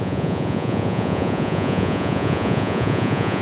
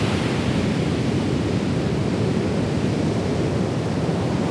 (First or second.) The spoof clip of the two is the first